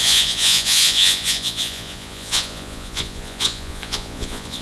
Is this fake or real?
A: fake